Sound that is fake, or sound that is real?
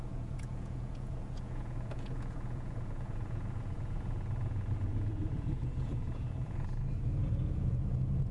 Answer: fake